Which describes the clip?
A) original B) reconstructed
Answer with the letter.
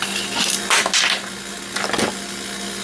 A